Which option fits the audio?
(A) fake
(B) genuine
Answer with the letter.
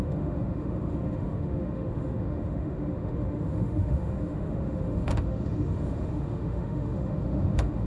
A